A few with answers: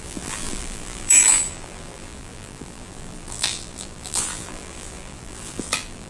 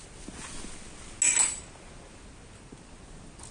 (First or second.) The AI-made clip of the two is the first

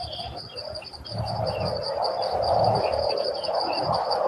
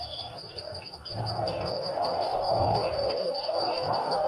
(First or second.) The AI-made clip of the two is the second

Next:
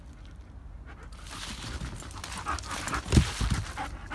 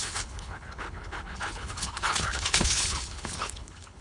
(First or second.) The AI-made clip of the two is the second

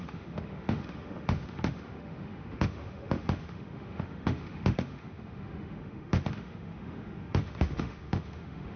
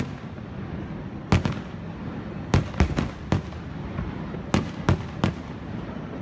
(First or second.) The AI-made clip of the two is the first